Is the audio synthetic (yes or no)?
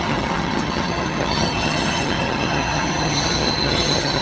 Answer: yes